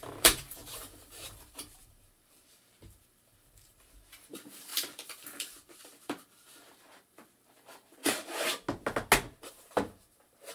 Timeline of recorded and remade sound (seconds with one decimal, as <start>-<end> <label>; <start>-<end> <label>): 0.0-8.0 remade; 8.0-9.5 recorded; 9.5-10.5 remade

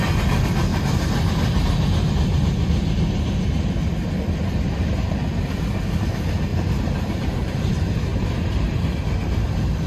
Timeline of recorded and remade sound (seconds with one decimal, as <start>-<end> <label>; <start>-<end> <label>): 0.0-0.7 recorded; 0.7-2.1 remade; 2.1-6.5 recorded; 6.5-7.7 remade; 7.7-8.1 recorded; 8.1-9.0 remade; 9.0-9.9 recorded

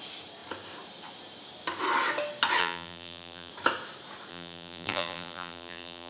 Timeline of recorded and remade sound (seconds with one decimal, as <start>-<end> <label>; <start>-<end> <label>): 0.0-2.6 recorded; 2.6-3.5 remade; 3.5-4.3 recorded; 4.3-6.1 remade

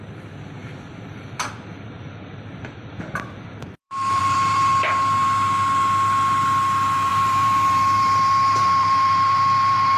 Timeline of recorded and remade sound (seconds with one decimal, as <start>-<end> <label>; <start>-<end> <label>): 0.0-4.7 remade; 4.7-7.1 recorded; 7.1-10.0 remade

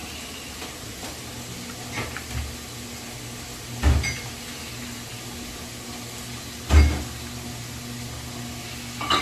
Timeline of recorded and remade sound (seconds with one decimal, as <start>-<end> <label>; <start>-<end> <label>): 0.0-9.2 recorded

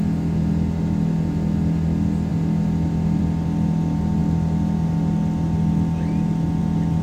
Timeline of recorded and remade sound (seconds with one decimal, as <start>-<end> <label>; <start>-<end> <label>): 0.0-7.0 recorded

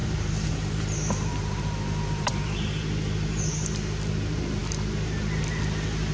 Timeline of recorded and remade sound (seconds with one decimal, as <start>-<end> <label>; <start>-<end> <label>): 0.0-2.4 remade; 2.4-6.1 recorded

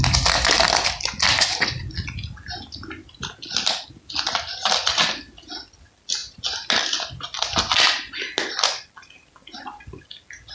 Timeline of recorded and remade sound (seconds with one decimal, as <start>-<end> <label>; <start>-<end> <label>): 0.0-10.5 recorded